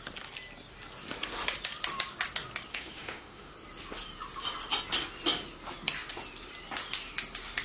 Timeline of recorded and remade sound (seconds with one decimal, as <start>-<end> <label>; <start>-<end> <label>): 0.0-2.7 recorded; 2.7-3.5 remade; 3.5-7.6 recorded